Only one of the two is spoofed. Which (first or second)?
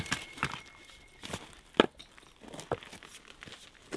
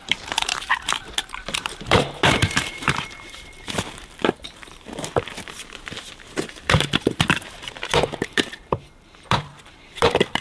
second